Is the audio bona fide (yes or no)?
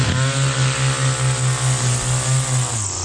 yes